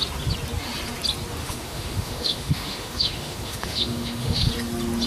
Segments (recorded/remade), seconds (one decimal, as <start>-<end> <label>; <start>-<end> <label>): 0.0-1.4 recorded; 1.4-4.5 remade; 4.5-5.1 recorded